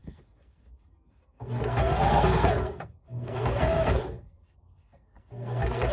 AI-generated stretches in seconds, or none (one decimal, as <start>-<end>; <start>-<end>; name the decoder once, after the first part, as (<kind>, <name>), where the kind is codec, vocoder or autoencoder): 0.0-5.9 (codec, SNAC)